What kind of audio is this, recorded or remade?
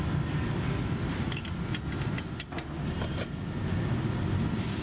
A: recorded